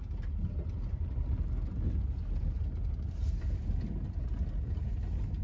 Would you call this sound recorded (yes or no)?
yes